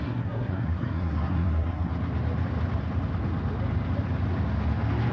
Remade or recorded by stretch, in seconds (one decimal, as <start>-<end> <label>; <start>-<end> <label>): 0.0-1.9 remade; 1.9-5.1 recorded